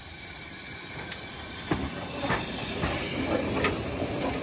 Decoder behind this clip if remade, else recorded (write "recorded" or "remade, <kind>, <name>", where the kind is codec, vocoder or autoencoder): remade, vocoder, BigVGAN v2